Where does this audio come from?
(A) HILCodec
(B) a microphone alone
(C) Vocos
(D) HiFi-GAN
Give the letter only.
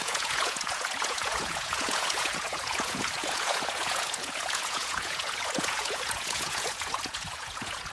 C